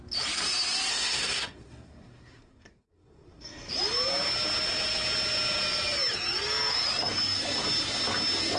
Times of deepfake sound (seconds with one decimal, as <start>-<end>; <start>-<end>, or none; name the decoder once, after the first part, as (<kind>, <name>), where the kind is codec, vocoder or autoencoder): 0.9-3.7 (codec, SNAC)